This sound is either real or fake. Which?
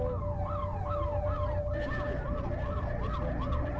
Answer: real